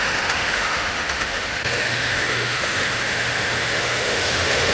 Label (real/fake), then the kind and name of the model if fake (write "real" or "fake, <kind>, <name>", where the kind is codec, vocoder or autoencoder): fake, autoencoder, DAC-VAE